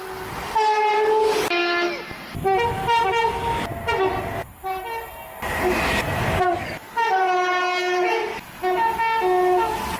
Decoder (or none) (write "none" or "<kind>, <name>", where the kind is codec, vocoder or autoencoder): none